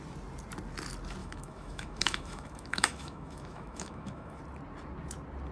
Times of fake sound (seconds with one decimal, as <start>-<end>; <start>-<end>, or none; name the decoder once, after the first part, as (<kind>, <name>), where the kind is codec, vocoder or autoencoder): 1.2-4.4 (autoencoder, DAC-VAE)